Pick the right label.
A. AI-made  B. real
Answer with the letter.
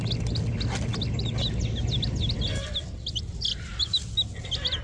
B